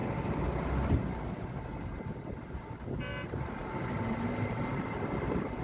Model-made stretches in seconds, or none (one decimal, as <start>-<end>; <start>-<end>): none